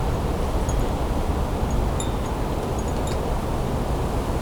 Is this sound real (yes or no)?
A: yes